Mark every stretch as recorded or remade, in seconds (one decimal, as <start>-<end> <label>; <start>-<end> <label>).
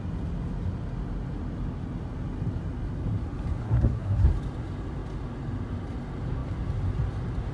0.0-3.6 recorded; 3.6-4.3 remade; 4.3-7.5 recorded